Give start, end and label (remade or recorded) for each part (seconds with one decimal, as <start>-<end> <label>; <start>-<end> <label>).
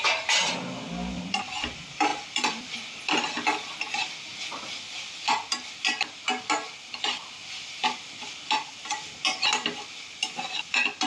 0.0-11.1 recorded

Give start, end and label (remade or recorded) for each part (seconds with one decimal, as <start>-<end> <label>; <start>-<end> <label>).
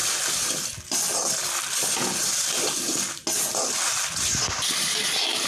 0.0-5.5 recorded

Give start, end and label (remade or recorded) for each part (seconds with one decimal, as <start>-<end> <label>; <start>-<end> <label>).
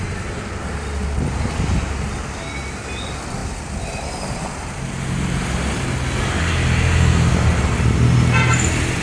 0.0-9.0 recorded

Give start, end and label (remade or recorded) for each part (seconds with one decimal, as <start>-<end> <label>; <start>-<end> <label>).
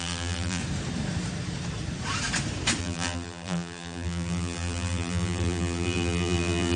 0.0-0.6 remade; 0.6-2.8 recorded; 2.8-6.8 remade